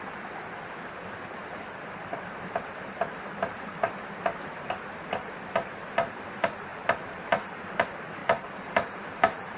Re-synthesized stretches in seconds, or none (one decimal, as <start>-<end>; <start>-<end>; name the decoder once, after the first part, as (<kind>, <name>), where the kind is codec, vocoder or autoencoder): 1.4-4.1 (vocoder, BigVGAN v2); 6.7-7.2; 8.2-9.6